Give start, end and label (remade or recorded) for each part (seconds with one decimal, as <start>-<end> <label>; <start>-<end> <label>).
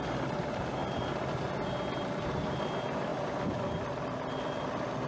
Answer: 0.0-5.1 recorded